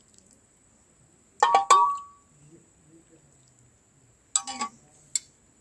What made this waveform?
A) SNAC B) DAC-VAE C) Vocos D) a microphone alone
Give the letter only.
D